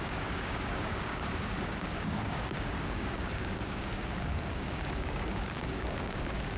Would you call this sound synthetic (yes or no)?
yes